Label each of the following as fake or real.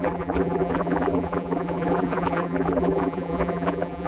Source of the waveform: fake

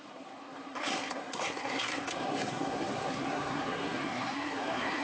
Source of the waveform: fake